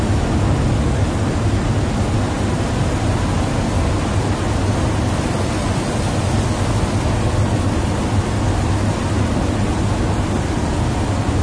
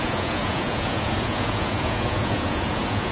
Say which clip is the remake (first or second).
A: second